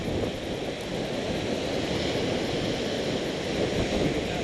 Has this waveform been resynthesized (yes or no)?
no